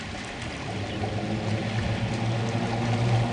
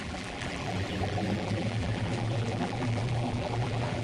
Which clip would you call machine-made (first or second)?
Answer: second